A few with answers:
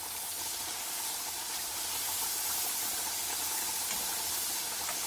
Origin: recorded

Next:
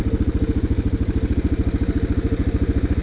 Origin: recorded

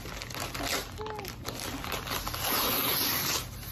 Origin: recorded